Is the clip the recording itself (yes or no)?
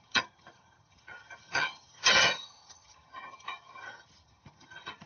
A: no